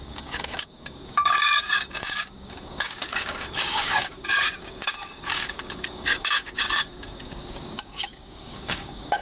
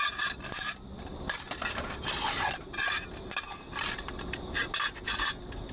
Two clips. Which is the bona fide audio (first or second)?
second